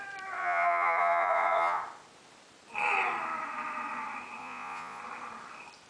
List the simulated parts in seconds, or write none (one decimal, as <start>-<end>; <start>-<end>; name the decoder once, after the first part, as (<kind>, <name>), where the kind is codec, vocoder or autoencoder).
0.4-1.8 (vocoder, Vocos); 4.4-5.0